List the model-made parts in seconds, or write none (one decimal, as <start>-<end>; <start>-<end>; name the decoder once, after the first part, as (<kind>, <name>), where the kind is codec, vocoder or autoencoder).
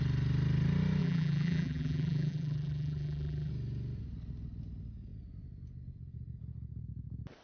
1.0-3.5 (vocoder, BigVGAN v2)